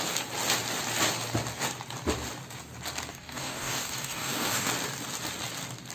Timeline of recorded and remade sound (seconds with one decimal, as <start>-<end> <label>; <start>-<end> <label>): 0.0-3.1 recorded; 3.1-4.7 remade; 4.7-5.9 recorded